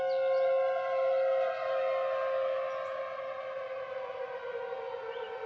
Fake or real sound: real